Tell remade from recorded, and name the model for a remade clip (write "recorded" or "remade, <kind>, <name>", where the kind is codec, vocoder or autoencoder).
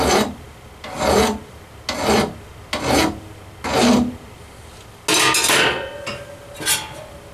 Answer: recorded